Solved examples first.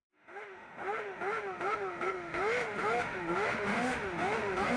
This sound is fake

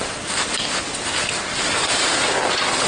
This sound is real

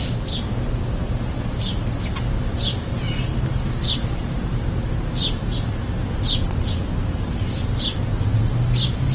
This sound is real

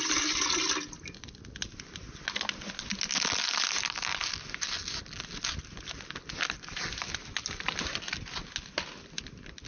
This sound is real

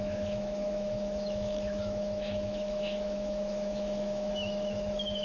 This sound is fake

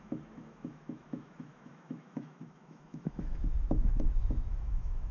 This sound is fake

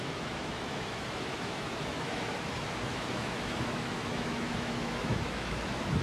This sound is fake